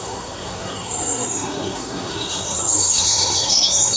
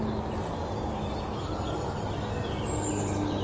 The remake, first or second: first